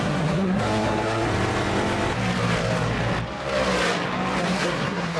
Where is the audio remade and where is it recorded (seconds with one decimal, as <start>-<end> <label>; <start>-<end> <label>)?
0.0-1.3 remade; 1.3-4.4 recorded; 4.4-5.2 remade